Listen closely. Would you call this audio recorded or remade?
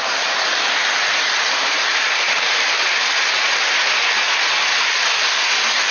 recorded